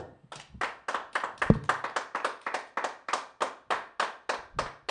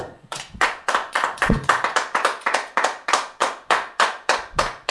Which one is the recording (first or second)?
first